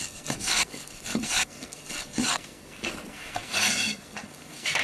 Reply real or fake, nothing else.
fake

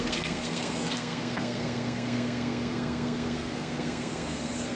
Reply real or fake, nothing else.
fake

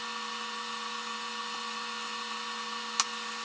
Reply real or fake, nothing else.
real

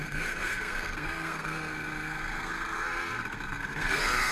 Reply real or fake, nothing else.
fake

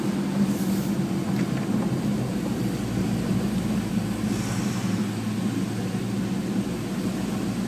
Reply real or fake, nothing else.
real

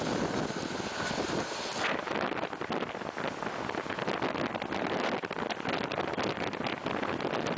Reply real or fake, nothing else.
real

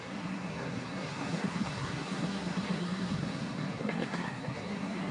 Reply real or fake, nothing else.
fake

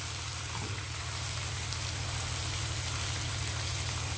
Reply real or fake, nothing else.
real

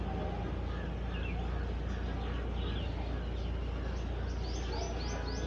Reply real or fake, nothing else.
real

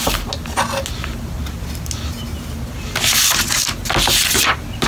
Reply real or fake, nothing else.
real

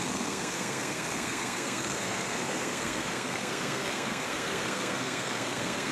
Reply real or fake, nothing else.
fake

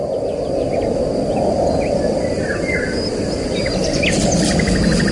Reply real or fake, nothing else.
real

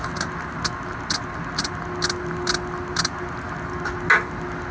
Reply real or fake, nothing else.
real